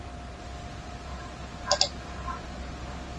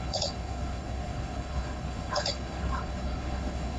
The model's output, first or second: second